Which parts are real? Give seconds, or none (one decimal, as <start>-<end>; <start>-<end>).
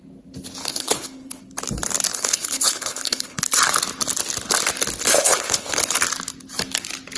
0.0-0.6; 1.4-2.1; 3.4-5.1; 5.8-7.2